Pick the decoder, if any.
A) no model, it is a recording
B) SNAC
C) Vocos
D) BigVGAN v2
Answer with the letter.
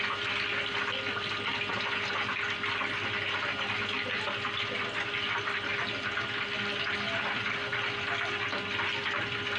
A